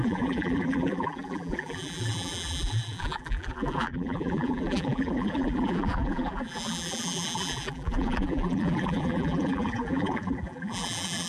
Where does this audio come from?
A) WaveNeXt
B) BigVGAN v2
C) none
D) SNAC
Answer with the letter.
B